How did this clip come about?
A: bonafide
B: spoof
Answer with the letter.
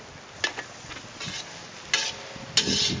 A